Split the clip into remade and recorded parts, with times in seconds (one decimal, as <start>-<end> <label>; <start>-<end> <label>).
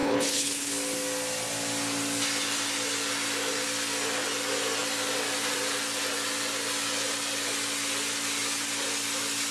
0.0-0.7 remade; 0.7-9.5 recorded